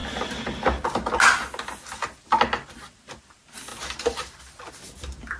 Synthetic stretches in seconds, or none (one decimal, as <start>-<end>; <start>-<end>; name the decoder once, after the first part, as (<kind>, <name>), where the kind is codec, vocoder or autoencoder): none